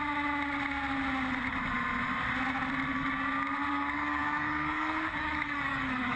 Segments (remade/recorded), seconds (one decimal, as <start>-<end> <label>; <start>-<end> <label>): 0.0-3.7 recorded; 3.7-6.2 remade